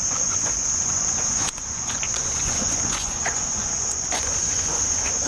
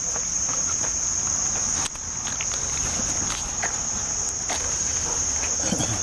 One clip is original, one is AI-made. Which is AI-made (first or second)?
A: first